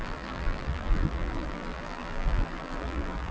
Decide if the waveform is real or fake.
fake